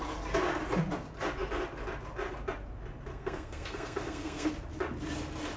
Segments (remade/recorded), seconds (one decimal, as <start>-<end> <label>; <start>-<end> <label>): 0.0-3.1 recorded; 3.1-4.5 remade; 4.5-5.6 recorded